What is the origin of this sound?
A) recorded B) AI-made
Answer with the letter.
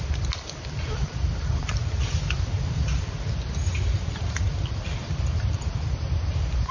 A